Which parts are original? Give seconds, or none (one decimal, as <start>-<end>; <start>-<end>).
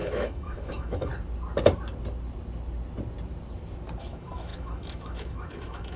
1.1-4.0